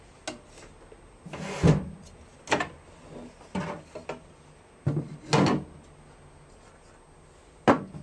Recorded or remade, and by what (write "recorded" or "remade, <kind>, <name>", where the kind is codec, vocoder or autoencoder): recorded